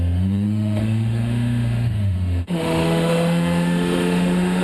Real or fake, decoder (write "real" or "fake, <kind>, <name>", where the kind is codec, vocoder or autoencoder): fake, autoencoder, DAC-VAE